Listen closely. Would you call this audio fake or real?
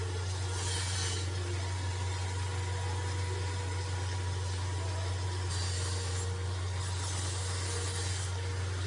real